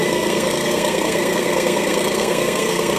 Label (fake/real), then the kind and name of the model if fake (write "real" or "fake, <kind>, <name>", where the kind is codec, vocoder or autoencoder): fake, codec, SNAC